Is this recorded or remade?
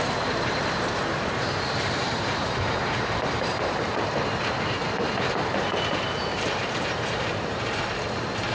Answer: remade